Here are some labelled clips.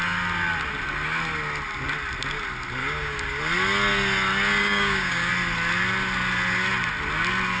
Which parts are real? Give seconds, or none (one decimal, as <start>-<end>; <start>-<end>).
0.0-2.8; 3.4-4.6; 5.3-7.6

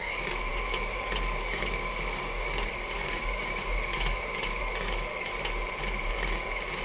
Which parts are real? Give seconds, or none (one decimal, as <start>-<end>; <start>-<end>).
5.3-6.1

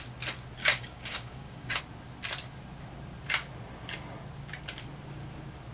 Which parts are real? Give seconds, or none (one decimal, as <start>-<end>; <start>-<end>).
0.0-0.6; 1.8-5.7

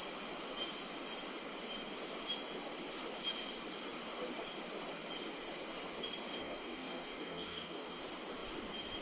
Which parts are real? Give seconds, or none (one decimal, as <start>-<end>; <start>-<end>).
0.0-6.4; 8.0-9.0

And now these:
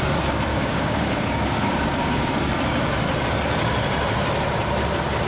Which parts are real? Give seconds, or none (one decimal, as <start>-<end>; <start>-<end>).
0.0-0.5; 2.5-5.3